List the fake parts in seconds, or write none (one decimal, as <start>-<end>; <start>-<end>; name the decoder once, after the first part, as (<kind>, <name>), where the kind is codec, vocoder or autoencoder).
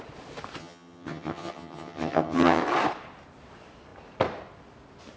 0.6-2.6 (vocoder, HiFi-GAN)